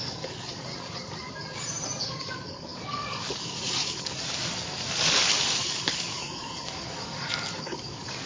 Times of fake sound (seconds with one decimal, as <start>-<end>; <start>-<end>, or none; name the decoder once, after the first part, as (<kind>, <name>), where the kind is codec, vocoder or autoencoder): 0.0-0.7 (codec, DAC); 2.0-8.3